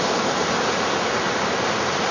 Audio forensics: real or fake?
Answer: real